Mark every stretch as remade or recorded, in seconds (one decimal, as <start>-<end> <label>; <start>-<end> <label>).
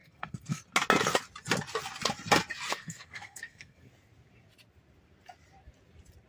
0.0-0.6 remade; 0.6-2.7 recorded; 2.7-3.9 remade; 3.9-6.3 recorded